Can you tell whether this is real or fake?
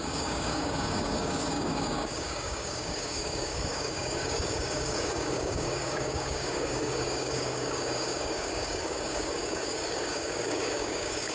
fake